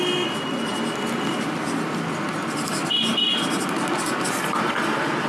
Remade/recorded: recorded